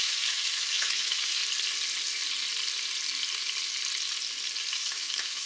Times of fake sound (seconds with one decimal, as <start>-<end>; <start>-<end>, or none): 0.0-1.4; 4.7-5.5